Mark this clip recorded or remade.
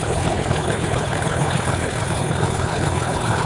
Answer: remade